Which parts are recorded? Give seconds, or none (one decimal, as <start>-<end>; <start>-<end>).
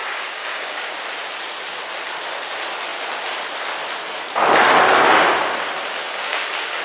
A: 0.9-6.0